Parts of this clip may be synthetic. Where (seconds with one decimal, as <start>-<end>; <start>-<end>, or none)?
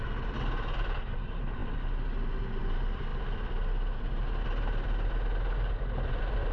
none